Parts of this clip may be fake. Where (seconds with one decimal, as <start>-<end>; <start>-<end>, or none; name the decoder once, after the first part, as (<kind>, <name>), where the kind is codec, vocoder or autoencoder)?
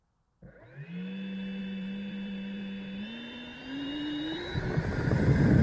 0.0-0.4 (vocoder, BigVGAN v2); 1.6-5.6